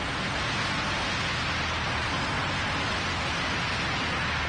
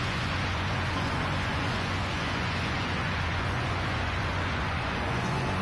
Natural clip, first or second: first